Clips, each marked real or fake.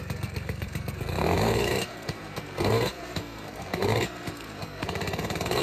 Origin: fake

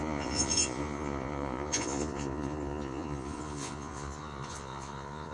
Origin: fake